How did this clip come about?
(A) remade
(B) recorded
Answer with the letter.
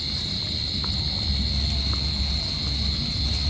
B